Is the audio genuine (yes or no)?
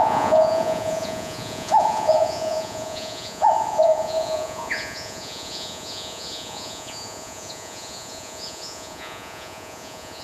no